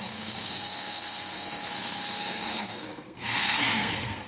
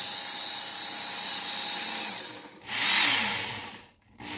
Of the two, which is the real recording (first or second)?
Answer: second